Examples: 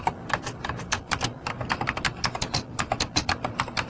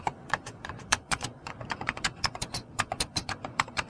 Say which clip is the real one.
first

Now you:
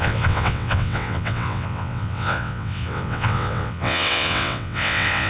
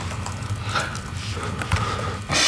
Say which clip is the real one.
second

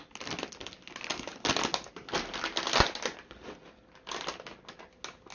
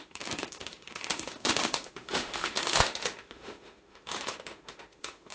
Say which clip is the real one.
first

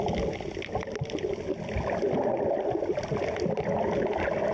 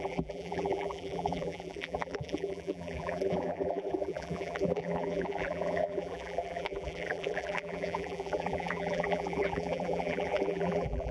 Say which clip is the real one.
first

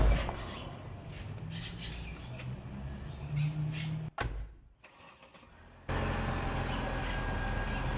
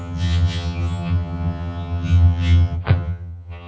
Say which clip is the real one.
first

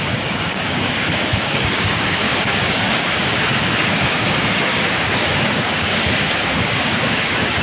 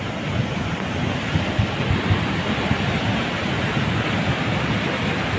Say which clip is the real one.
second